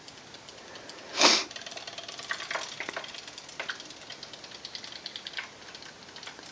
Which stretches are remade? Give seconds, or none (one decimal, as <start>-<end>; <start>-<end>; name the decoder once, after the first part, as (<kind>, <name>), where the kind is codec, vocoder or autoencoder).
none